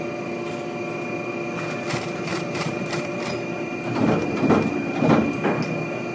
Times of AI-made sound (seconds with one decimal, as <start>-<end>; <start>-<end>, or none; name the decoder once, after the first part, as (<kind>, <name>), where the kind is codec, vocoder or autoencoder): 2.3-5.4 (vocoder, BigVGAN v2)